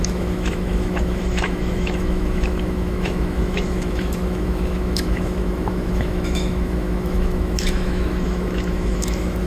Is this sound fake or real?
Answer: fake